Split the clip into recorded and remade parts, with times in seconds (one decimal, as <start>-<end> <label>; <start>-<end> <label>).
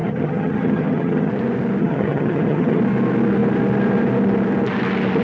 0.0-1.3 remade; 1.3-1.8 recorded; 1.8-2.8 remade; 2.8-5.2 recorded